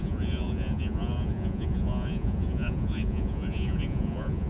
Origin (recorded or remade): remade